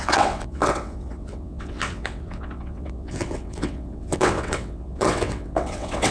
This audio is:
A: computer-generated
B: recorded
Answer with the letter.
A